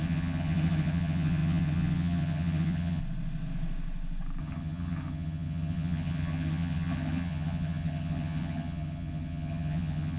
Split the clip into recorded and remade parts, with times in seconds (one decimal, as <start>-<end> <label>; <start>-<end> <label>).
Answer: 0.0-3.0 remade; 3.0-4.4 recorded; 4.4-10.2 remade